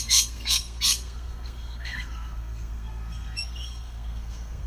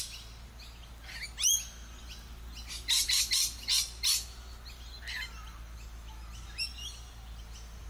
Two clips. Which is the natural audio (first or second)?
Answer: second